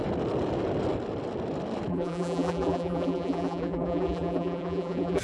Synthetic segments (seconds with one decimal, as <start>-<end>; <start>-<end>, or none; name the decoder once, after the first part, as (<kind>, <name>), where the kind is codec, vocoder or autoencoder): 1.9-5.2 (vocoder, BigVGAN v2)